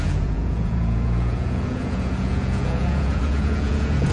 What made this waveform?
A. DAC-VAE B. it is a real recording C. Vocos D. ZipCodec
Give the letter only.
C